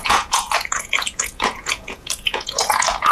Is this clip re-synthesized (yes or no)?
yes